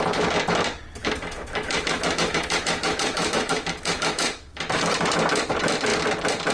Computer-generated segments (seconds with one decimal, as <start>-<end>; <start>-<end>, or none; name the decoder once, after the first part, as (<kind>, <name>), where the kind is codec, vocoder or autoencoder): 1.0-4.9 (autoencoder, DAC-VAE)